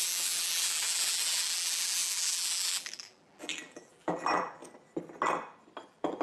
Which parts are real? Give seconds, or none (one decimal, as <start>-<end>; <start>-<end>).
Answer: 4.6-5.8